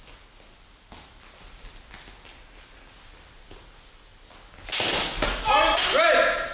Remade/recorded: recorded